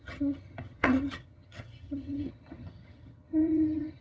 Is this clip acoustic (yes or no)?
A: no